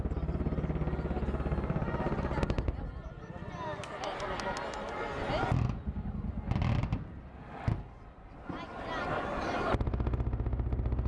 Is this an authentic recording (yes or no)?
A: yes